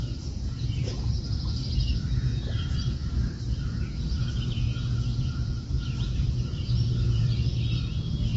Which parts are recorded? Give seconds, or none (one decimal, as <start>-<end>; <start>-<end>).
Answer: 3.0-3.6